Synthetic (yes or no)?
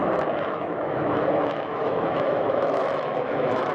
yes